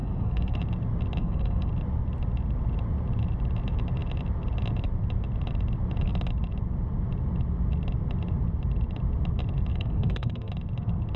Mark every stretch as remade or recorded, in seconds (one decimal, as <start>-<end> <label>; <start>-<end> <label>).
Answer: 0.0-0.6 remade; 0.6-1.2 recorded; 1.2-1.7 remade; 1.7-9.7 recorded; 9.7-10.5 remade; 10.5-11.2 recorded